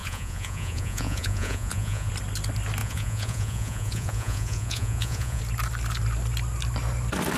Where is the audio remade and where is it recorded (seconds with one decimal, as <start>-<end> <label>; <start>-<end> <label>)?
0.0-2.1 remade; 2.1-2.8 recorded; 2.8-5.4 remade; 5.4-7.4 recorded